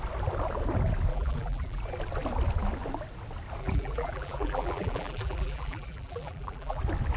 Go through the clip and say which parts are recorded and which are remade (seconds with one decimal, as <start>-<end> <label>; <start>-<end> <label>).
0.0-1.1 recorded; 1.1-1.8 remade; 1.8-3.6 recorded; 3.6-6.8 remade; 6.8-7.2 recorded